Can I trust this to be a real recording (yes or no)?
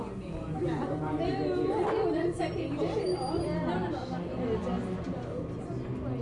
yes